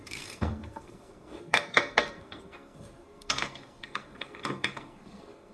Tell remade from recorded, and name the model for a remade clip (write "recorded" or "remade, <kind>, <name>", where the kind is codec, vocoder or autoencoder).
remade, codec, SNAC